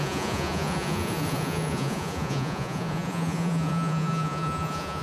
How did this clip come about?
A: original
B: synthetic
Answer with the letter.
B